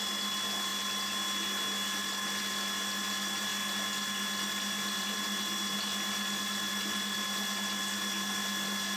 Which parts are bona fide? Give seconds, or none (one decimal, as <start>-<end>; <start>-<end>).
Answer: 0.0-9.0